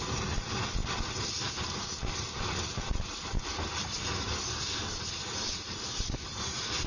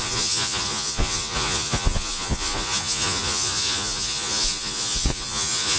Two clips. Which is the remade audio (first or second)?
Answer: second